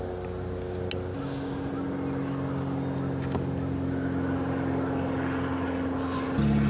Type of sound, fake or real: real